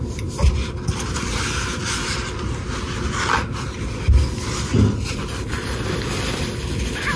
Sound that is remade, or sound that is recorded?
recorded